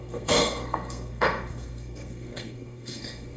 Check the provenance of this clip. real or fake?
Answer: fake